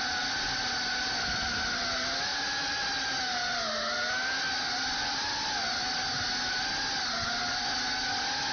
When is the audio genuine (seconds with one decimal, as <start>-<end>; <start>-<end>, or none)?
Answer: 0.0-8.5